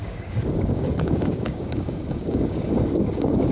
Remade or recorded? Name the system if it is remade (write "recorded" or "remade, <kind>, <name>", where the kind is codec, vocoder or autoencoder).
remade, codec, DAC